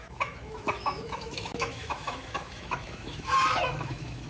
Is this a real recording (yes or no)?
no